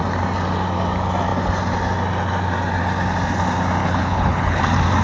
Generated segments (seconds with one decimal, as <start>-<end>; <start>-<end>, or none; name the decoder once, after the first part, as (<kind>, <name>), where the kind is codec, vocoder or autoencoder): 3.8-4.6 (codec, HILCodec)